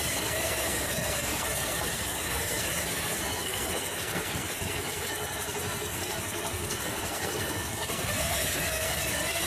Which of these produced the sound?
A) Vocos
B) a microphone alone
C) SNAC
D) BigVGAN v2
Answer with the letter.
C